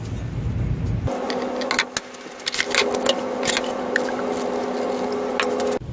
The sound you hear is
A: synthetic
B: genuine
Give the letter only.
B